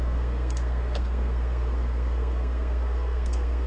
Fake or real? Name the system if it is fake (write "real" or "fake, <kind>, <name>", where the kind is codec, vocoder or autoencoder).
fake, codec, SNAC